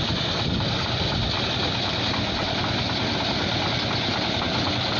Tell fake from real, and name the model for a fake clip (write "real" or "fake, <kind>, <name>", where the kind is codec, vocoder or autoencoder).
real